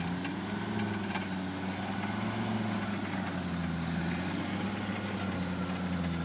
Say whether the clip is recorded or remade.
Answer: recorded